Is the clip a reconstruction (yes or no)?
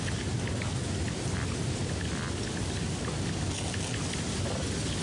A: no